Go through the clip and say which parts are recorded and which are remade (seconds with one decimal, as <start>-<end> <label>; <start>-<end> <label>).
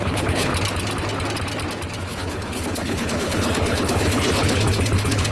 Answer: 0.0-0.5 remade; 0.5-2.0 recorded; 2.0-5.3 remade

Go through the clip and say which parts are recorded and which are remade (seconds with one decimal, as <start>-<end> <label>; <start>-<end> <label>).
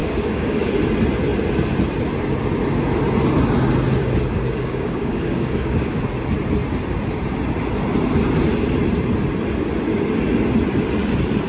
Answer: 0.0-0.7 remade; 0.7-4.0 recorded; 4.0-6.0 remade; 6.0-11.5 recorded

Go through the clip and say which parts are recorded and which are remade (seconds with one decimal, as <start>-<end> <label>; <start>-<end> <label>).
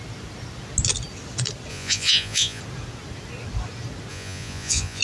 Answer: 0.0-1.7 recorded; 1.7-2.6 remade; 2.6-4.1 recorded; 4.1-5.0 remade